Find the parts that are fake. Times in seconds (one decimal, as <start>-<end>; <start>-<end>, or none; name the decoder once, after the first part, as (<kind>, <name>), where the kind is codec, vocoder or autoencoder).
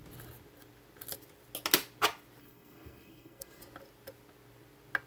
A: 2.4-3.6 (codec, SNAC)